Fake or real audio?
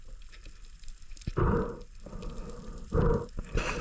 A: fake